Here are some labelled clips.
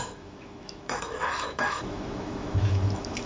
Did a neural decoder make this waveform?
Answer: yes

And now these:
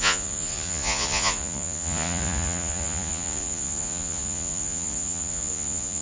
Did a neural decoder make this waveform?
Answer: yes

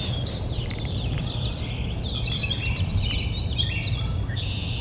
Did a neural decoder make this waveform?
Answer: yes